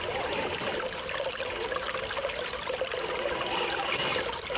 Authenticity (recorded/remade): recorded